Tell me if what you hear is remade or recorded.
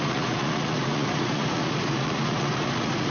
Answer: remade